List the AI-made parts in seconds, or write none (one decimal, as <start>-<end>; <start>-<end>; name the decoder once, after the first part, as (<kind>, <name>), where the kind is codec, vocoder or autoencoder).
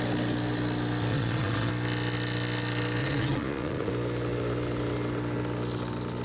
1.1-1.7 (vocoder, Vocos); 3.0-3.9